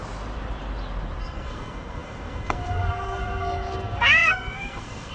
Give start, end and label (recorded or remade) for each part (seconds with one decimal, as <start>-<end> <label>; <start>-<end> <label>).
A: 0.0-1.2 recorded; 1.2-5.1 remade